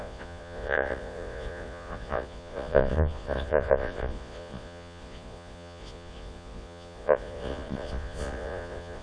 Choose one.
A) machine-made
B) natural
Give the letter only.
A